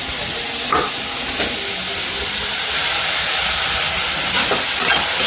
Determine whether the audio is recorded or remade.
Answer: recorded